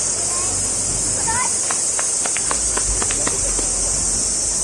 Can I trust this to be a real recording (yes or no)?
yes